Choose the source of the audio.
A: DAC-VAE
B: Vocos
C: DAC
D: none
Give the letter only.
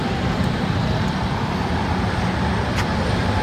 D